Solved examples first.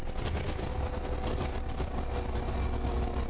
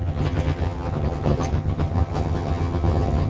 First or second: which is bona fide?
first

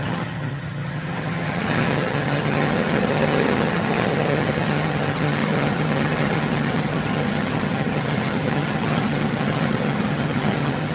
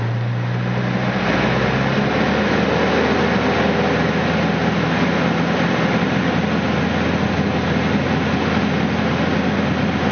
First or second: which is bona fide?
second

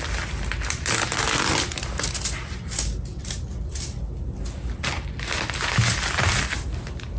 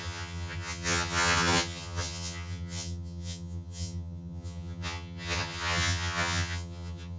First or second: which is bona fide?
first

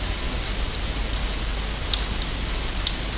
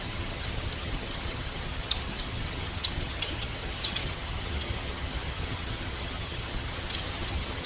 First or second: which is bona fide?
first